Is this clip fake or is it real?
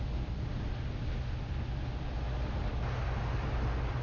real